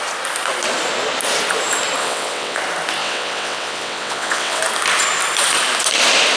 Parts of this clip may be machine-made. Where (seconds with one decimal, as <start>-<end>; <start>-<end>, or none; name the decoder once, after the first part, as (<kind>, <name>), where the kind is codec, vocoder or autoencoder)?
2.0-2.6 (vocoder, WaveNeXt); 3.0-4.6